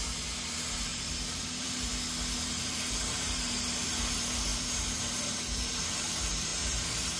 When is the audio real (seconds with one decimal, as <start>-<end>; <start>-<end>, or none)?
1.9-2.6